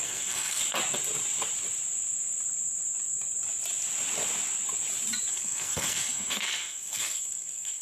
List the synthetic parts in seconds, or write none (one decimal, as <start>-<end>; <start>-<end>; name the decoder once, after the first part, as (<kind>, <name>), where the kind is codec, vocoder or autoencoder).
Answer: 0.0-0.6 (codec, SNAC); 5.3-7.8